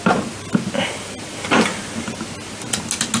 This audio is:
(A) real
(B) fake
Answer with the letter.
A